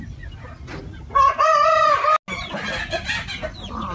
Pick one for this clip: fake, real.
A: real